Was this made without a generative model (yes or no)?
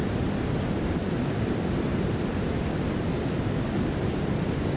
no